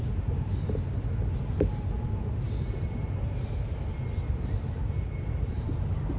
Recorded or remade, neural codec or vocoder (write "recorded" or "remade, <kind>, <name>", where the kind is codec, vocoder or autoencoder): recorded